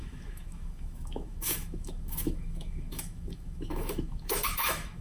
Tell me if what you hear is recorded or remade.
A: remade